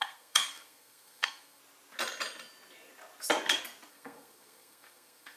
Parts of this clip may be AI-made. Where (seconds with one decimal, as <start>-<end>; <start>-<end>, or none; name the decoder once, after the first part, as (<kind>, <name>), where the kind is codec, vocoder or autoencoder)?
0.0-1.6 (codec, SNAC); 3.9-5.4